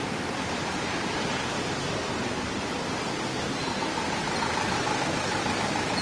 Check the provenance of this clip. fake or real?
real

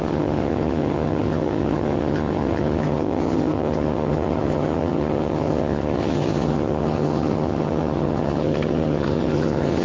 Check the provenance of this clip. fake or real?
fake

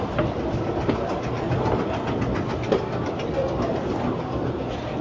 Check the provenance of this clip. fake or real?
real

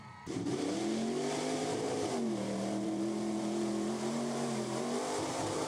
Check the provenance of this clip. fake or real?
fake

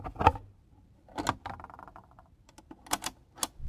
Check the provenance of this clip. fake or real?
real